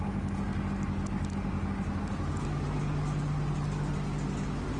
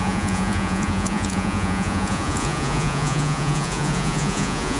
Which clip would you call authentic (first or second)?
first